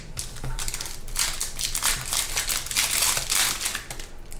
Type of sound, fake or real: real